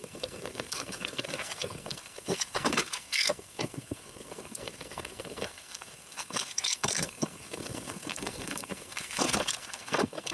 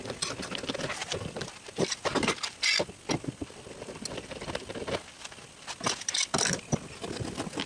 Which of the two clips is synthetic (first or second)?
first